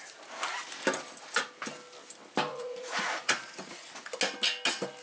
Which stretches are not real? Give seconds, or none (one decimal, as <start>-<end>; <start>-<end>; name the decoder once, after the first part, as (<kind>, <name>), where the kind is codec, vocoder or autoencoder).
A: 2.5-3.9 (vocoder, Vocos)